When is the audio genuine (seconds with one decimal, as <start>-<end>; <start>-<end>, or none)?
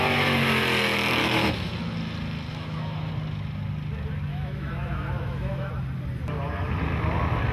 0.0-1.2; 1.7-2.5; 3.1-4.3; 5.7-7.5